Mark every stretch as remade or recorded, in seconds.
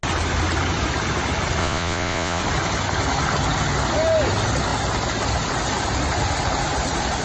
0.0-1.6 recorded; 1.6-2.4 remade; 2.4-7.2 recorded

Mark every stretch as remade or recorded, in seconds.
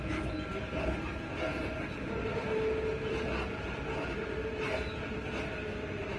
0.0-6.2 recorded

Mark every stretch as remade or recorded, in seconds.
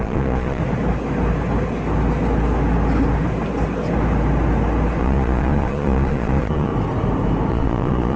0.0-0.6 remade; 0.6-5.0 recorded; 5.0-6.7 remade; 6.7-7.5 recorded; 7.5-8.2 remade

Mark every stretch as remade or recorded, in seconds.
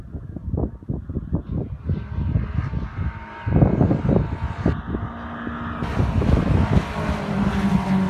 0.0-8.1 recorded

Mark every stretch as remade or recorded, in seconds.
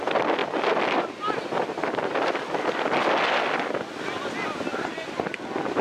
0.0-5.8 recorded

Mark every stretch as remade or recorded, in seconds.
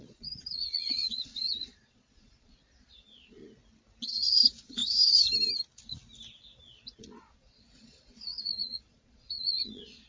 0.0-3.4 remade; 3.4-4.1 recorded; 4.1-4.8 remade; 4.8-7.0 recorded; 7.0-10.1 remade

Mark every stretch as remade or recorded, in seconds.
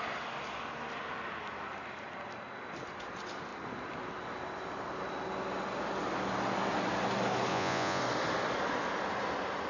0.0-7.5 recorded; 7.5-8.0 remade; 8.0-9.7 recorded